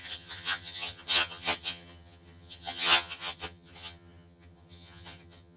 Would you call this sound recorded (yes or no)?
no